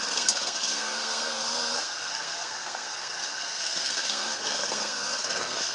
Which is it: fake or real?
fake